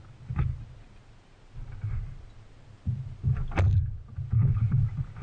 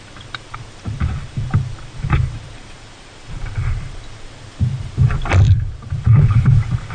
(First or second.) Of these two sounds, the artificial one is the second